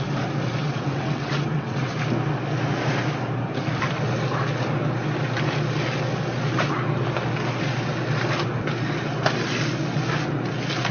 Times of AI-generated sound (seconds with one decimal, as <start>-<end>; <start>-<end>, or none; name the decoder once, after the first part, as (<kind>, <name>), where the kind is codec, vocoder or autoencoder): 0.6-1.9 (vocoder, WaveNeXt)